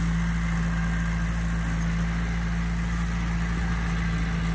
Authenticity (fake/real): real